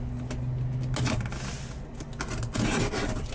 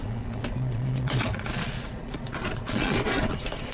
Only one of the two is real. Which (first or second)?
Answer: first